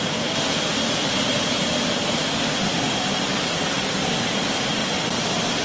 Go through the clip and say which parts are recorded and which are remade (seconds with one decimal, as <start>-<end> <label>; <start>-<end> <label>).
0.0-0.7 recorded; 0.7-1.9 remade; 1.9-4.8 recorded; 4.8-5.6 remade